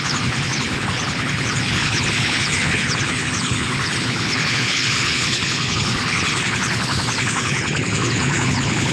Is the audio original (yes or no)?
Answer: no